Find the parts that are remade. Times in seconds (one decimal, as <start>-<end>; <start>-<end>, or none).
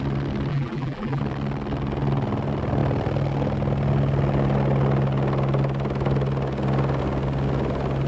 0.5-1.2